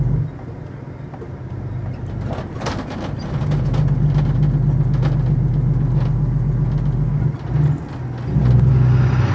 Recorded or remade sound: recorded